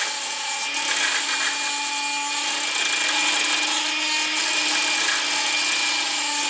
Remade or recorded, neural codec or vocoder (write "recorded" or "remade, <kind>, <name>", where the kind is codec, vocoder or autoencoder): recorded